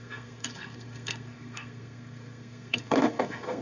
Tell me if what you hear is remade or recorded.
remade